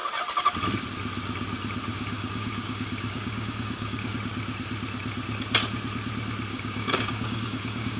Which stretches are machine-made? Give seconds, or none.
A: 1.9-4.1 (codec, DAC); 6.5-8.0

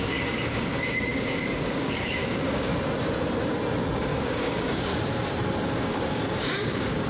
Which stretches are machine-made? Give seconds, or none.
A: 0.0-2.7 (codec, DAC); 4.0-4.9; 5.7-7.1